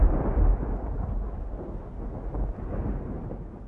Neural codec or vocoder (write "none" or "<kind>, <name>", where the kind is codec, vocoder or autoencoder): none